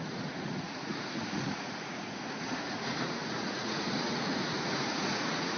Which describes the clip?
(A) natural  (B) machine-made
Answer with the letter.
B